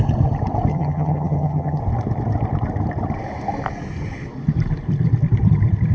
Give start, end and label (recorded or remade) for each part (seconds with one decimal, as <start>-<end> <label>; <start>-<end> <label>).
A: 0.0-0.7 recorded; 0.7-1.8 remade; 1.8-5.9 recorded